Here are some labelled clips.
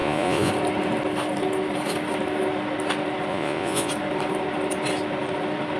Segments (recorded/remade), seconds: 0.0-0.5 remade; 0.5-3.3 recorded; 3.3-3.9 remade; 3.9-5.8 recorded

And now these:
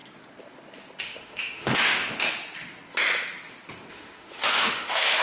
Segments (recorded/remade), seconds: 0.0-1.0 recorded; 1.0-2.0 remade; 2.0-3.9 recorded; 3.9-5.2 remade

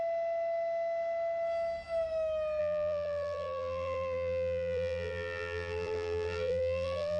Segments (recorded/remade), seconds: 0.0-2.6 recorded; 2.6-7.2 remade

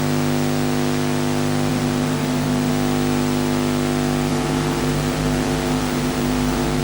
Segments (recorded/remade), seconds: 0.0-1.7 recorded; 1.7-2.7 remade; 2.7-4.3 recorded; 4.3-6.8 remade

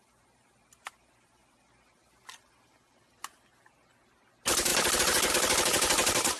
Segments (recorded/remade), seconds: 0.0-6.4 recorded

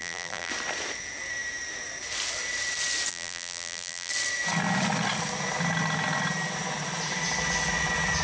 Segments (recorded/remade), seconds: 0.0-0.5 remade; 0.5-3.1 recorded; 3.1-4.1 remade; 4.1-8.2 recorded